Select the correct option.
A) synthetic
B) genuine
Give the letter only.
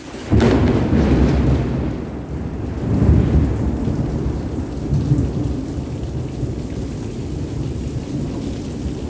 B